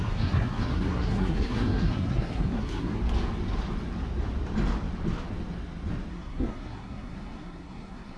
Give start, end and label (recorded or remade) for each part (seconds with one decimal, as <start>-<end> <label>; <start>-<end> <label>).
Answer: 0.0-3.0 remade; 3.0-6.1 recorded; 6.1-8.2 remade